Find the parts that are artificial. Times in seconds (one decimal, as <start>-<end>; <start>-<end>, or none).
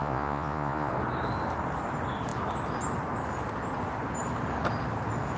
0.0-0.9